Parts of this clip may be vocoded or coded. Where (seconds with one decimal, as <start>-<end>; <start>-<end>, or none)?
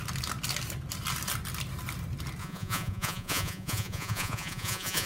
2.4-5.1